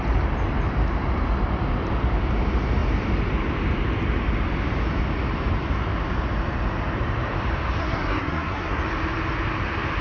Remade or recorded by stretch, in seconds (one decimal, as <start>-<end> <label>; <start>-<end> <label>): 0.0-7.8 recorded; 7.8-8.8 remade; 8.8-10.0 recorded